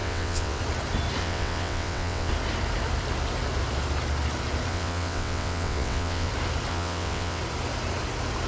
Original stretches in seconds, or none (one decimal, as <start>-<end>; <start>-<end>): 0.6-1.2; 2.3-4.7; 6.3-6.7; 7.4-8.5